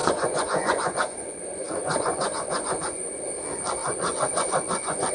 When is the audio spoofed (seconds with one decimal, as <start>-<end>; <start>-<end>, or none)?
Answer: 0.0-3.1; 3.8-5.1